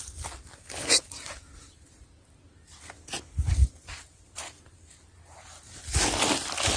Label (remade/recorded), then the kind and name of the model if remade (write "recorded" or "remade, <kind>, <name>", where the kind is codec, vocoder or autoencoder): recorded